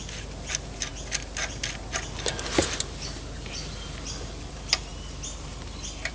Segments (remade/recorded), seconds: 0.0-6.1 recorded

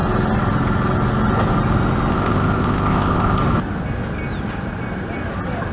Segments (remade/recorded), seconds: 0.0-2.1 recorded; 2.1-3.4 remade; 3.4-5.7 recorded

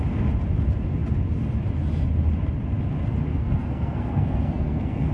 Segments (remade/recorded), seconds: 0.0-3.3 recorded; 3.3-5.1 remade

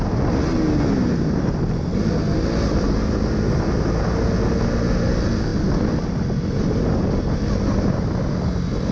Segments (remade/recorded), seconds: 0.0-8.9 recorded

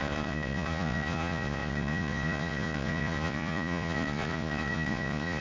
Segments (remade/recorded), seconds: 0.0-5.4 remade

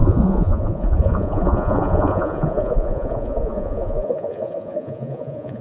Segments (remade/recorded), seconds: 0.0-5.6 remade